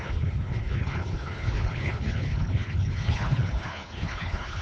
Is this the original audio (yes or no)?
no